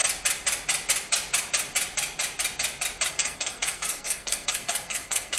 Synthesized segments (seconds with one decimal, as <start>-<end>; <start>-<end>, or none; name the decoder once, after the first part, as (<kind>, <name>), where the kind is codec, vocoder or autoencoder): 3.1-5.4 (codec, SNAC)